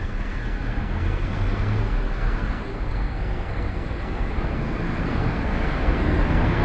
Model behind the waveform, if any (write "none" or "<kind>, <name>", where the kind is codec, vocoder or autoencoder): codec, SNAC